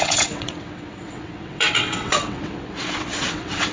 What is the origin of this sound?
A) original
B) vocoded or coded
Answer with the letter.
B